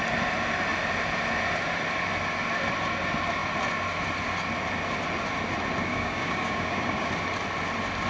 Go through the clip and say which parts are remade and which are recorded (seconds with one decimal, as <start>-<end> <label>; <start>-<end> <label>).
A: 0.0-5.9 recorded; 5.9-7.1 remade; 7.1-8.1 recorded